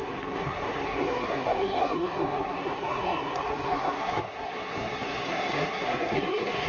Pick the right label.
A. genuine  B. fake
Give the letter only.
B